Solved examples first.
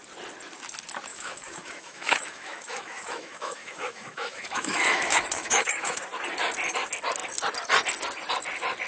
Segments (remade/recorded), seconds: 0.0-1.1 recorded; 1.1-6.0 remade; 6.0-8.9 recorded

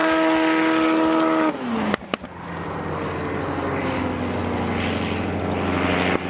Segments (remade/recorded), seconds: 0.0-6.3 recorded

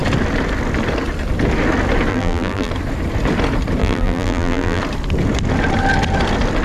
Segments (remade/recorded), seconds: 0.0-2.1 recorded; 2.1-2.7 remade; 2.7-3.8 recorded; 3.8-4.8 remade; 4.8-6.6 recorded